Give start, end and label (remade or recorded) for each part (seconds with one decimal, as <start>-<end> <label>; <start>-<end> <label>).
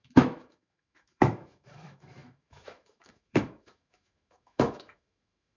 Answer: 0.0-5.6 remade